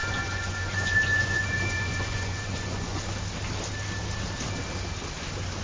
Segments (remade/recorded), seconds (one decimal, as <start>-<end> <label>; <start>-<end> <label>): 0.0-3.0 remade; 3.0-5.6 recorded